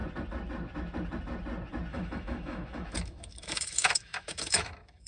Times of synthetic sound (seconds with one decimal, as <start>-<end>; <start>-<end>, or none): 1.9-5.1